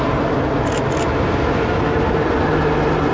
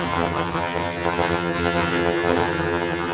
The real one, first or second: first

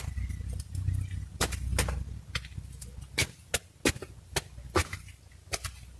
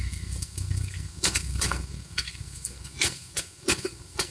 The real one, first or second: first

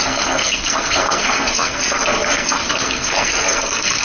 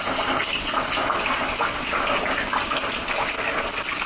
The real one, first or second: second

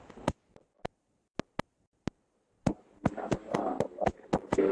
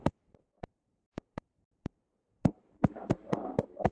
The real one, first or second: first